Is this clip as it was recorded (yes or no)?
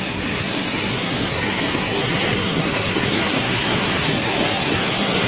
no